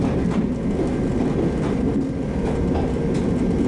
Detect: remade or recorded recorded